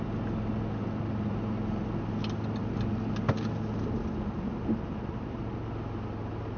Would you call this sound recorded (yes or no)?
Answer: yes